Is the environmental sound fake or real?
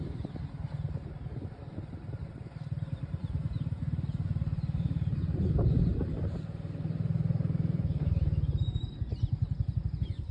fake